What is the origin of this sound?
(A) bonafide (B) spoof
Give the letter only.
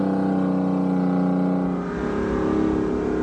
A